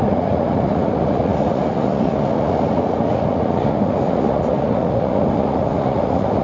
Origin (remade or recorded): remade